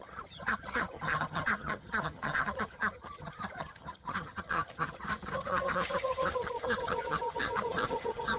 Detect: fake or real fake